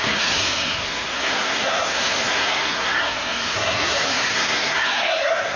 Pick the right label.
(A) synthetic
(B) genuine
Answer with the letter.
A